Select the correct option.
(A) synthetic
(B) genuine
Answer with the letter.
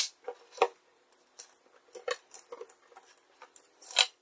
B